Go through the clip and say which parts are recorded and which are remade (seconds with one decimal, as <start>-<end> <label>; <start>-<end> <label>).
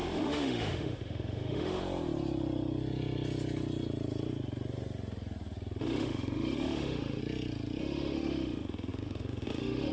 0.0-1.8 remade; 1.8-5.8 recorded; 5.8-7.2 remade; 7.2-7.8 recorded; 7.8-9.9 remade